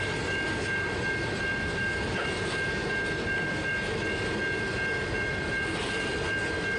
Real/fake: real